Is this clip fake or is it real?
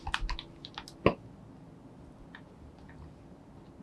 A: real